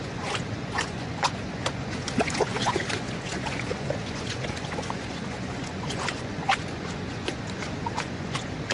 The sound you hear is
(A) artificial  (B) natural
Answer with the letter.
A